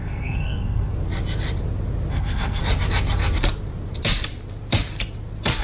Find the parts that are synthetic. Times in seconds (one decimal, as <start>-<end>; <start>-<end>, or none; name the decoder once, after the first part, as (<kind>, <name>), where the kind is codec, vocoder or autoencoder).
0.0-0.9 (codec, SNAC); 2.1-2.6